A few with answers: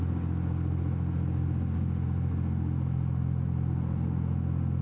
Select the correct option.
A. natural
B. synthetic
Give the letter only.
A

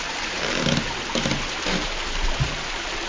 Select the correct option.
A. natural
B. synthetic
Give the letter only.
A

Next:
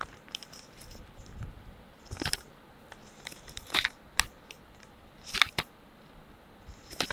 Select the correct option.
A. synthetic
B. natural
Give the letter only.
B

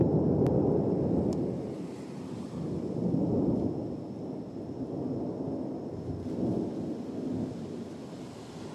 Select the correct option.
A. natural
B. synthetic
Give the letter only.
A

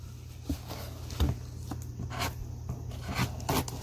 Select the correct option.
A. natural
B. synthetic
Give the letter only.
A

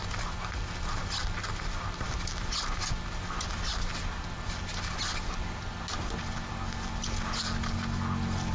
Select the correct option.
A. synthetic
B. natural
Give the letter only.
B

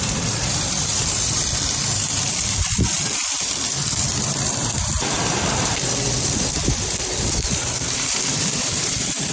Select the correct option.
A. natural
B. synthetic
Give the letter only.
B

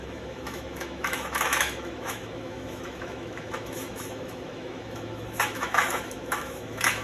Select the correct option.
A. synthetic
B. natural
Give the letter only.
A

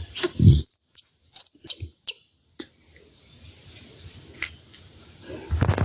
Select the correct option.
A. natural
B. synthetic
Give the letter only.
A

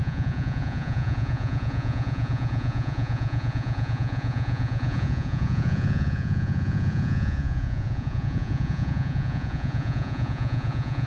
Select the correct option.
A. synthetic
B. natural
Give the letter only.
A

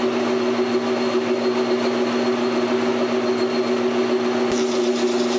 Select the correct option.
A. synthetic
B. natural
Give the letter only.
B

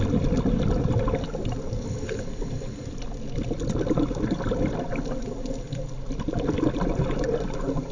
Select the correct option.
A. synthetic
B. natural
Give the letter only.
B